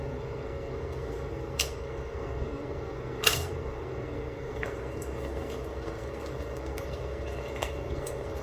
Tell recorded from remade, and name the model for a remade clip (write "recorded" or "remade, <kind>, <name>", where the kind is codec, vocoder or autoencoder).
remade, codec, SNAC